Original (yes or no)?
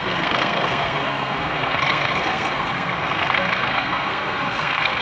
no